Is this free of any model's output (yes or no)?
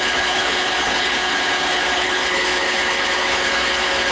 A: no